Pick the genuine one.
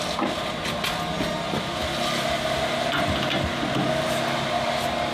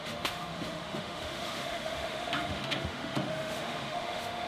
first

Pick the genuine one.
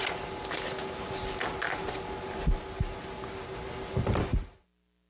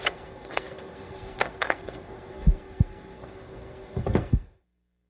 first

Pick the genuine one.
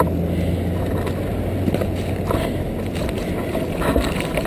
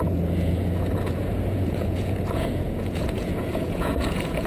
first